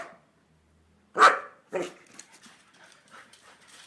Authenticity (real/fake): real